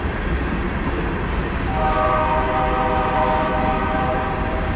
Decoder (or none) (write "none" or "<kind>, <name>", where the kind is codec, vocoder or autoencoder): none